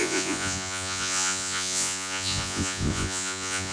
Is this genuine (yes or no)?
no